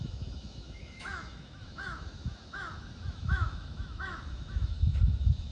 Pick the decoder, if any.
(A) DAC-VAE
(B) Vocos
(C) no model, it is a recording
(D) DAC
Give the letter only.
A